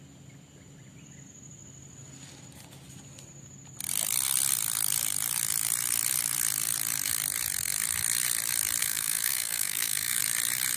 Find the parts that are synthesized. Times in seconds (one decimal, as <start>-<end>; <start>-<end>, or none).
8.8-10.2